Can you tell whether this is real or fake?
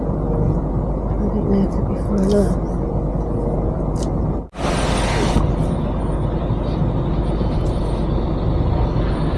real